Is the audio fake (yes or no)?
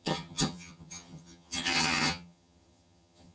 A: yes